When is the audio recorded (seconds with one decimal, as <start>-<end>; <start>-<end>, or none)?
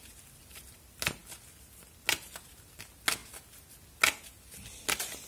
0.0-5.3